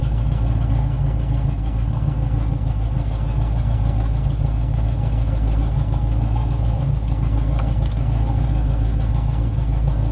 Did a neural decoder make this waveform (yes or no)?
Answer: yes